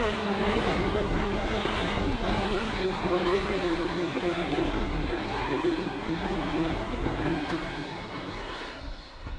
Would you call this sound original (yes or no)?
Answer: no